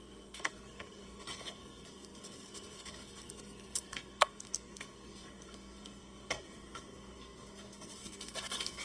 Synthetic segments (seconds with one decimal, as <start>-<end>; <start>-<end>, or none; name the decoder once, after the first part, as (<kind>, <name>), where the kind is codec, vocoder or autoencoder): 0.0-8.8 (codec, SNAC)